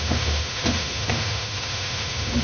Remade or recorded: remade